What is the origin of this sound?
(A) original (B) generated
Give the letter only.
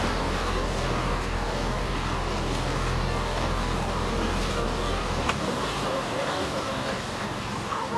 B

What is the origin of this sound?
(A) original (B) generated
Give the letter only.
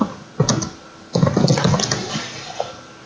A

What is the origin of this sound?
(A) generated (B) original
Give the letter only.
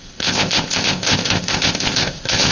A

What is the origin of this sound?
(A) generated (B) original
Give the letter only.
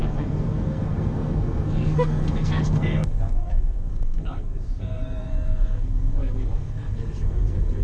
A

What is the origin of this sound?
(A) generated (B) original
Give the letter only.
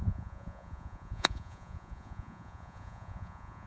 A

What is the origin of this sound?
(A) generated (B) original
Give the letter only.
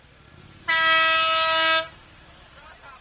B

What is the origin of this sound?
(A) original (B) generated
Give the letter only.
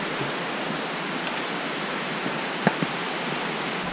A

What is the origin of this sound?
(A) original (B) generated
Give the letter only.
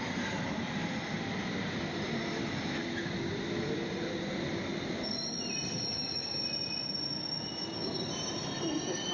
A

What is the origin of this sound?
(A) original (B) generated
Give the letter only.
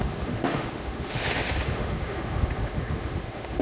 B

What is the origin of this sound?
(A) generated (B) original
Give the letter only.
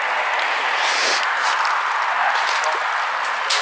B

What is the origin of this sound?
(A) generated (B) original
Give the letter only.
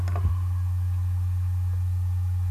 B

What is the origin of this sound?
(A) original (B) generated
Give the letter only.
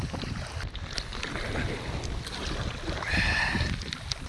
A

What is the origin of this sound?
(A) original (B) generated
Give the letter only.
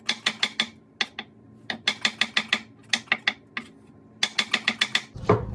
A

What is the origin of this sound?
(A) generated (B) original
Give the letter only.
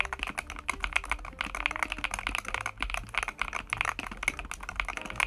B